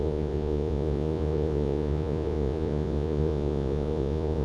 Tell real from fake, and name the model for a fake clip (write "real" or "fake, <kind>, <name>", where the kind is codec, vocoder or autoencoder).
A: fake, vocoder, Vocos